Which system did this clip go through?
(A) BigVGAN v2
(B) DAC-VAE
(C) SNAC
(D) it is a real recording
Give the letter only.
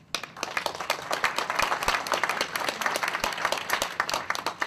D